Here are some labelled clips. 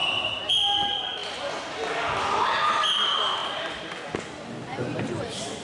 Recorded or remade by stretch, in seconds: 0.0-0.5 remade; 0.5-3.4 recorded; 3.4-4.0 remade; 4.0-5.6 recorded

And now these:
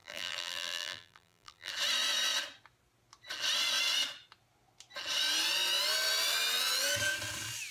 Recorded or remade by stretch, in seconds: 0.0-1.7 remade; 1.7-7.7 recorded

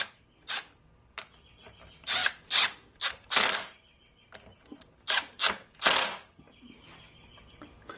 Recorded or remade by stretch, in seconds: 0.0-2.2 recorded; 2.2-3.1 remade; 3.1-8.0 recorded

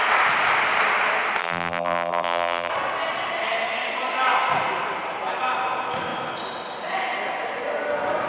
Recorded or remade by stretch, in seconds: 0.0-1.4 recorded; 1.4-2.7 remade; 2.7-8.3 recorded

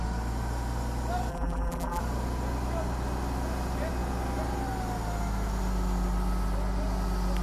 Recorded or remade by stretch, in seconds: 0.0-1.3 recorded; 1.3-2.0 remade; 2.0-7.4 recorded

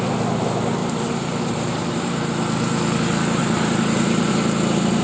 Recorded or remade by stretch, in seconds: 0.0-0.8 recorded; 0.8-2.2 remade; 2.2-3.4 recorded; 3.4-4.3 remade; 4.3-5.0 recorded

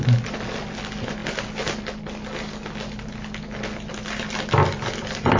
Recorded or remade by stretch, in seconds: 0.0-5.4 recorded

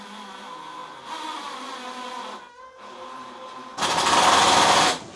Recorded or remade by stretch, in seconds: 0.0-5.2 recorded